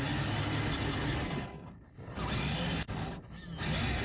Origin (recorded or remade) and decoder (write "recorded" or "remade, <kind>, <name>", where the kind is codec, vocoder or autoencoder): recorded